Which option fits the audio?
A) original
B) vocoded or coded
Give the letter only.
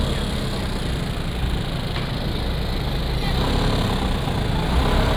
A